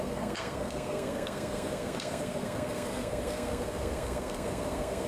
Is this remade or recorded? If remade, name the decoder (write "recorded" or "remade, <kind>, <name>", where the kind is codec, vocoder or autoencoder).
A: remade, codec, SNAC